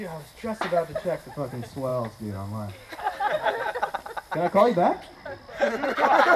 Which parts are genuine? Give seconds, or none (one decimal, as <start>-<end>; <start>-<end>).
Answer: 0.0-6.4